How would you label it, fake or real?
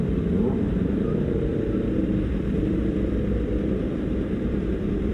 fake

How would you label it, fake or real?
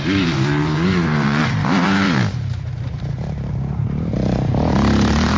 fake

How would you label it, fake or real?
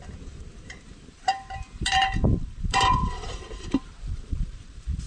fake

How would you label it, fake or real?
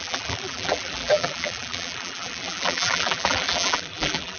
fake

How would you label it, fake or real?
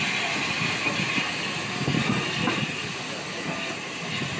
real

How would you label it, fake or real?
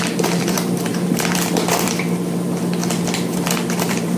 fake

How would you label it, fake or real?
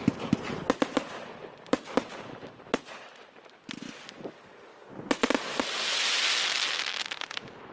real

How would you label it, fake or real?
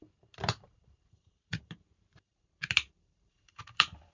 fake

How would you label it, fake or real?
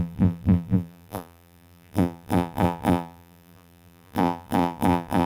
fake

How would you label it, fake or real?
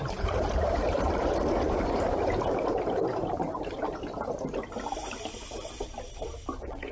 fake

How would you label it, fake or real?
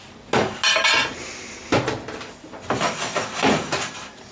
real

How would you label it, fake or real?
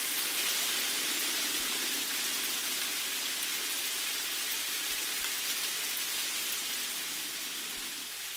real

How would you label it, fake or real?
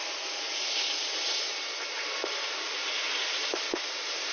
fake